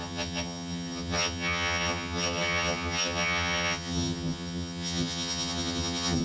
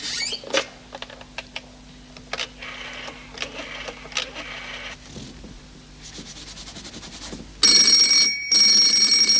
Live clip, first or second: second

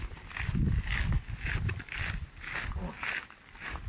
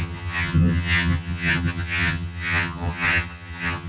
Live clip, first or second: first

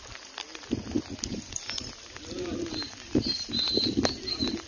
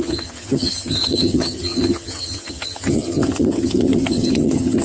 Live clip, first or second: first